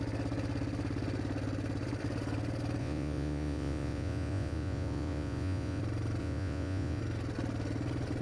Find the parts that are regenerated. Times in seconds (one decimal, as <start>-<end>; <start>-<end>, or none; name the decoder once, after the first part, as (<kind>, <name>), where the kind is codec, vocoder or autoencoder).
2.8-5.8 (vocoder, Vocos); 6.2-7.0